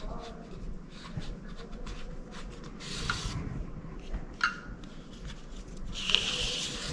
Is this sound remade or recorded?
recorded